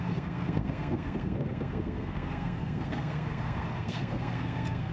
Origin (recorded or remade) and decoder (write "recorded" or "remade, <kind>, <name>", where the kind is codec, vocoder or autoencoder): remade, codec, SNAC